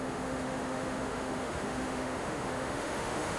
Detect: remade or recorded remade